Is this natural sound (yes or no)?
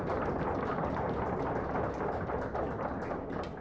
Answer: yes